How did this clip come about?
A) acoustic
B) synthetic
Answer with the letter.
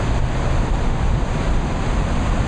A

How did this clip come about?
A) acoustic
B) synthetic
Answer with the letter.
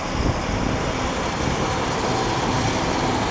A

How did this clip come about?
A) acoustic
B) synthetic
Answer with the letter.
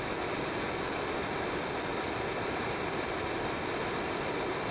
A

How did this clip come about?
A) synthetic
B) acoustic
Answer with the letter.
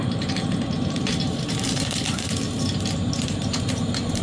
A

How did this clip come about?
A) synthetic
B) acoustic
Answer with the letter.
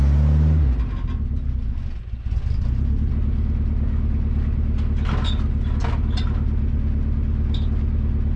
B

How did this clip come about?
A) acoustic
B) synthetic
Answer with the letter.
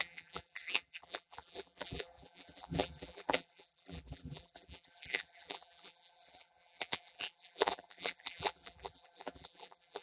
B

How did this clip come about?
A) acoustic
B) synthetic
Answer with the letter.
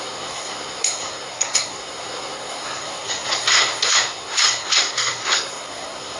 B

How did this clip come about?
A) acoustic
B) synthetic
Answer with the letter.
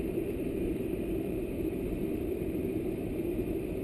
B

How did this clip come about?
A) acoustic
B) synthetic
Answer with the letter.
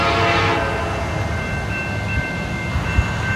A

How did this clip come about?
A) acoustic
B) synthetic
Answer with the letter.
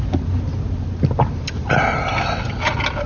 A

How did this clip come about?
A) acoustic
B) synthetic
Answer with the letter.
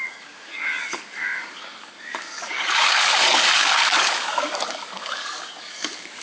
B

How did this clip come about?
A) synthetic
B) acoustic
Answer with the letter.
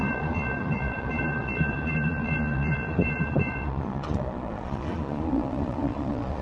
A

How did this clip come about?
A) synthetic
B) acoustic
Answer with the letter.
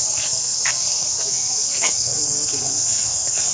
A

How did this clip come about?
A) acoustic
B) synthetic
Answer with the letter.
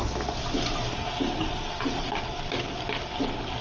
A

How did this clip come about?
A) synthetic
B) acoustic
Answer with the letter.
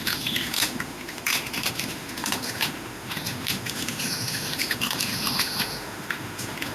A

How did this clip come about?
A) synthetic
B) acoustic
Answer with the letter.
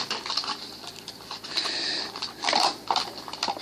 A